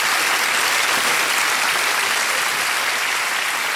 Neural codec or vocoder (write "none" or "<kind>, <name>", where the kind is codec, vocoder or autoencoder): none